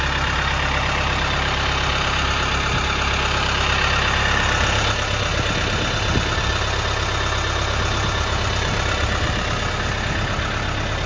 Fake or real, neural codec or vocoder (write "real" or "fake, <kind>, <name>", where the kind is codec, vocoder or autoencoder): real